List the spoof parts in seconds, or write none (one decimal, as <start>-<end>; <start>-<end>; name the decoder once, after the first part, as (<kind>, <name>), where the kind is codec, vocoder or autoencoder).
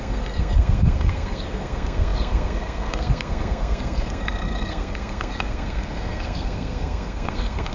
0.0-7.7 (codec, SNAC)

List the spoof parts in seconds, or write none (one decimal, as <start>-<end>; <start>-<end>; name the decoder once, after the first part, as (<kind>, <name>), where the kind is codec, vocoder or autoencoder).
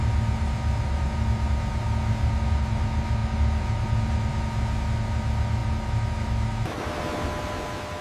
none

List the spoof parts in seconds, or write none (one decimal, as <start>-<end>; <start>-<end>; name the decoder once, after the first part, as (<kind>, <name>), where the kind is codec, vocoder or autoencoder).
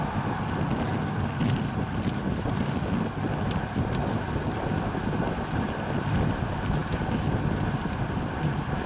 none